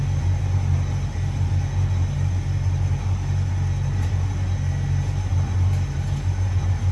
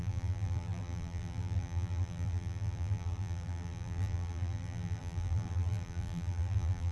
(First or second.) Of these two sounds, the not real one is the second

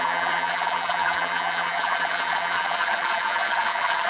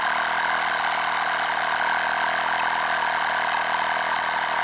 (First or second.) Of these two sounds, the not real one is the first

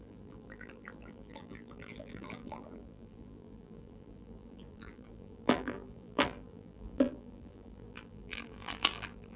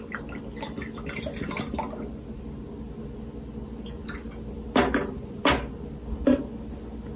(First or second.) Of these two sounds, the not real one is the first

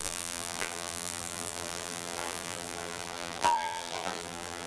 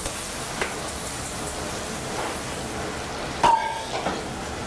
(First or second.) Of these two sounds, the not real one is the first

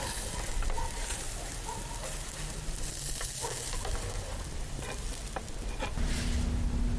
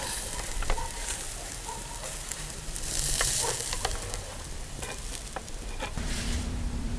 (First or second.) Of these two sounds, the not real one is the second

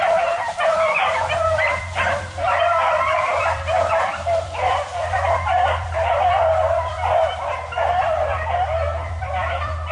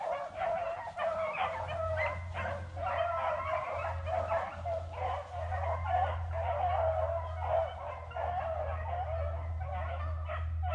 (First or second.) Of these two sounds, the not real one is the first